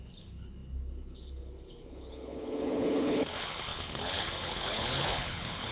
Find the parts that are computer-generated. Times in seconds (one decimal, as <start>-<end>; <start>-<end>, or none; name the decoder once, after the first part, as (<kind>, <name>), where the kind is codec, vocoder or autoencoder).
0.0-5.7 (codec, HILCodec)